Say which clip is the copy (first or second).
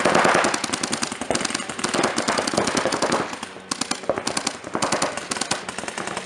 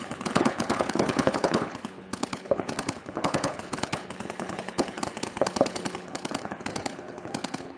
second